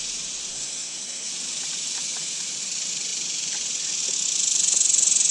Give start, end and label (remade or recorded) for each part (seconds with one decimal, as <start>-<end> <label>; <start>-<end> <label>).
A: 0.0-0.5 recorded; 0.5-1.3 remade; 1.3-5.3 recorded